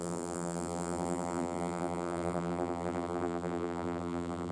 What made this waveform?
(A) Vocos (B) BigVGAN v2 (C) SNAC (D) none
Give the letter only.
B